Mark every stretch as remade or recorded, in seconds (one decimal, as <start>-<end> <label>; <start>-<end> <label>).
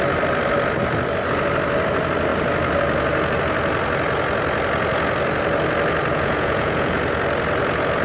0.0-6.1 recorded; 6.1-7.0 remade; 7.0-8.0 recorded